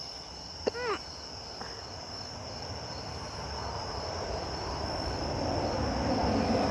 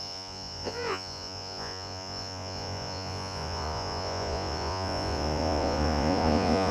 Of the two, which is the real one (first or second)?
first